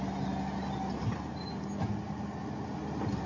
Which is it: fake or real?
real